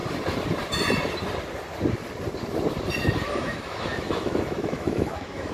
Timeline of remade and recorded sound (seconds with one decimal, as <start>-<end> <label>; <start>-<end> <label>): 0.0-3.3 recorded; 3.3-5.5 remade

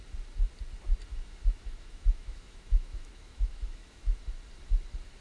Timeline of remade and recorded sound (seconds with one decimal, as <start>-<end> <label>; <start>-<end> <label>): 0.0-1.1 recorded; 1.1-4.2 remade; 4.2-5.2 recorded

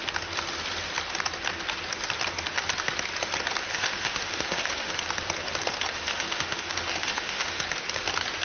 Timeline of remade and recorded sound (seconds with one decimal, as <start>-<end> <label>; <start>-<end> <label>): 0.0-3.7 recorded; 3.7-4.9 remade; 4.9-5.9 recorded; 5.9-7.6 remade; 7.6-8.4 recorded

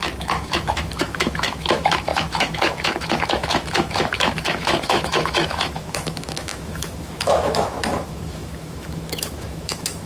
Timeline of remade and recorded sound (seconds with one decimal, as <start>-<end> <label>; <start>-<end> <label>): 0.0-10.1 remade

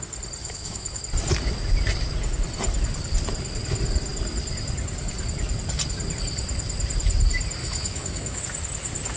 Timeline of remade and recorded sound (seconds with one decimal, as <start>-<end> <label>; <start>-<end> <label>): 0.0-0.4 recorded; 0.4-1.0 remade; 1.0-7.6 recorded; 7.6-8.4 remade; 8.4-9.2 recorded

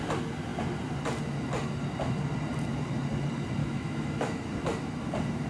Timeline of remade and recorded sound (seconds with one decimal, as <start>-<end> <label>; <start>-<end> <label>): 0.0-3.6 recorded; 3.6-4.5 remade; 4.5-5.5 recorded

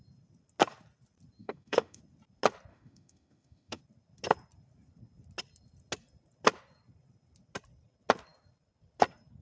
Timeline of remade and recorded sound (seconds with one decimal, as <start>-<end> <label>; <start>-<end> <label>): 0.0-1.4 recorded; 1.4-2.0 remade; 2.0-2.7 recorded; 2.7-3.8 remade; 3.8-9.4 recorded